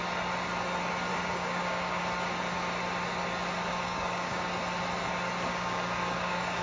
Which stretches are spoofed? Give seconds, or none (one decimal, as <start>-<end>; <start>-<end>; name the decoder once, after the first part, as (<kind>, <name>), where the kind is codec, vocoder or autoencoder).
1.1-2.0 (codec, DAC); 3.7-4.5; 5.5-6.6